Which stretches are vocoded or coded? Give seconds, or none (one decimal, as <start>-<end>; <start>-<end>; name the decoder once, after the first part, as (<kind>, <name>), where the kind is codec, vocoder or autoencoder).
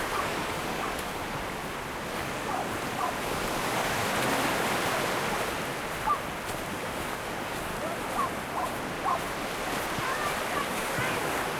0.0-1.2 (codec, DAC); 2.1-2.6; 3.2-4.0; 6.7-7.7; 10.6-11.6